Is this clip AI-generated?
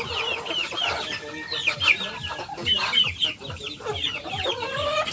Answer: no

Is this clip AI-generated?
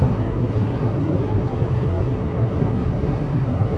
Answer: yes